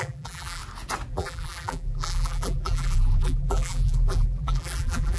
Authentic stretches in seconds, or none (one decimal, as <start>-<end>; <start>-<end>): 0.6-1.1